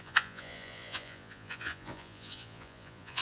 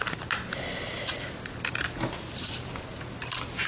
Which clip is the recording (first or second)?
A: second